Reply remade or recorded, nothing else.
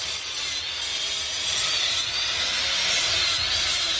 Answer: recorded